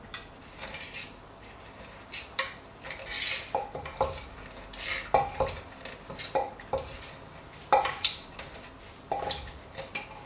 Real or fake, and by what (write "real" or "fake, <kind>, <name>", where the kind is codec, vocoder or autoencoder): real